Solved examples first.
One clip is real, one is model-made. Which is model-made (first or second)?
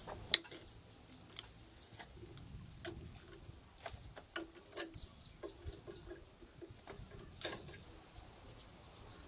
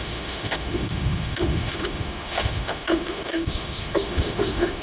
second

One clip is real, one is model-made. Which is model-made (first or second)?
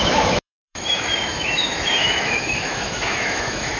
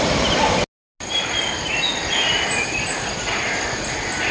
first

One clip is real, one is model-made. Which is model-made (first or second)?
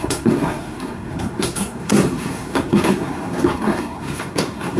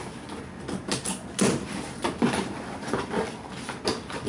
first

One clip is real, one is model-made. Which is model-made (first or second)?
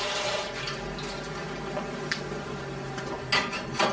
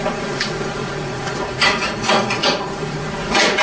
second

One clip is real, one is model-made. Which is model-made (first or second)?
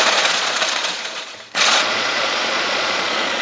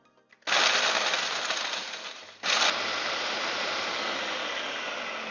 first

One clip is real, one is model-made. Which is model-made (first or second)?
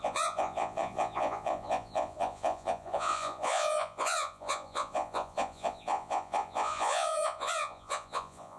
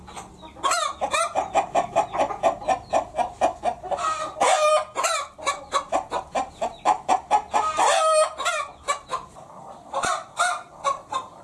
first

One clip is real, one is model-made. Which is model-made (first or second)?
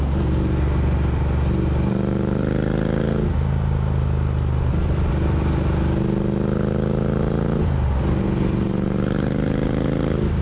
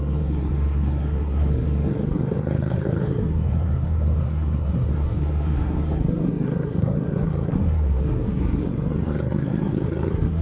second